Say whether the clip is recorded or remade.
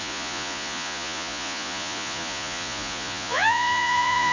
remade